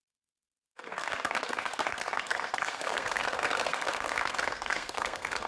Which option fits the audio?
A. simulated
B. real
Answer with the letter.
A